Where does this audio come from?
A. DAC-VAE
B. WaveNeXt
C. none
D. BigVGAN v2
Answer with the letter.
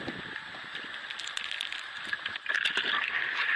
C